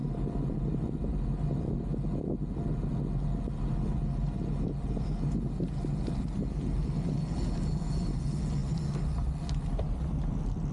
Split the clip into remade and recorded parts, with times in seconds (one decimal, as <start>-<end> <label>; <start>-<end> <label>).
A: 0.0-10.7 recorded

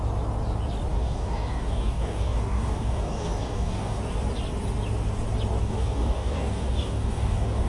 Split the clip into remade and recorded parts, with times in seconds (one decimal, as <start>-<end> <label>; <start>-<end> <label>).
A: 0.0-0.9 recorded; 0.9-4.0 remade; 4.0-5.6 recorded; 5.6-7.7 remade

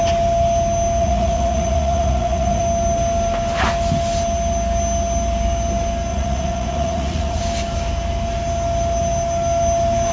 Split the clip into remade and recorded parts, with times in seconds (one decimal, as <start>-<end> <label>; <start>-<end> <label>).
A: 0.0-1.0 recorded; 1.0-2.6 remade; 2.6-6.1 recorded; 6.1-7.4 remade; 7.4-10.1 recorded

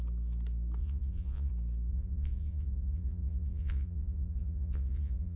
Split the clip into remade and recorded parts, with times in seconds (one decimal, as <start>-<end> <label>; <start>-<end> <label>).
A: 0.0-0.8 recorded; 0.8-1.5 remade; 1.5-1.9 recorded; 1.9-5.4 remade